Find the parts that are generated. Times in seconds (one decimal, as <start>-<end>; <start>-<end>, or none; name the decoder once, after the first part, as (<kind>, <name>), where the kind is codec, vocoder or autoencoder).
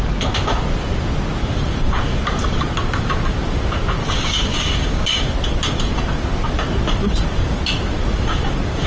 4.0-5.2 (codec, DAC)